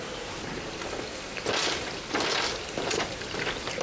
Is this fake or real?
real